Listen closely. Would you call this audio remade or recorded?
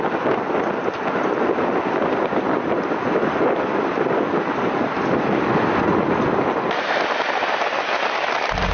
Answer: recorded